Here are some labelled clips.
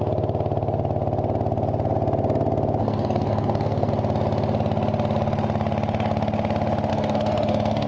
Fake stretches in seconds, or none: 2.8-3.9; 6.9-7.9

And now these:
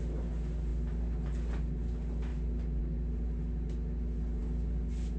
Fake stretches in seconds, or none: none